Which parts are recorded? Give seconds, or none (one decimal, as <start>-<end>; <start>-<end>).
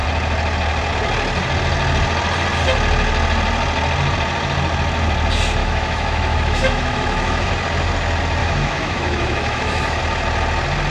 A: 0.0-5.6; 7.5-8.4; 10.0-10.9